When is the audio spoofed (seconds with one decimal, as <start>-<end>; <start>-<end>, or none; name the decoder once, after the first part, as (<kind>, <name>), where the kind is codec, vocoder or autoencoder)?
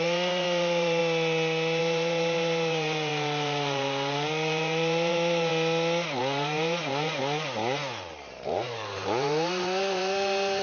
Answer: 0.0-1.0 (vocoder, BigVGAN v2); 1.8-5.5; 6.2-10.6